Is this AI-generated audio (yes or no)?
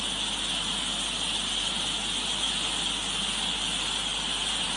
no